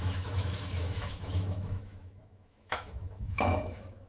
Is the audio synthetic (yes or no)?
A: yes